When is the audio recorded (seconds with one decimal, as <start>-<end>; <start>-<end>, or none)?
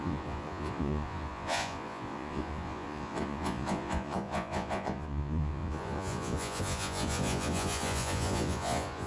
none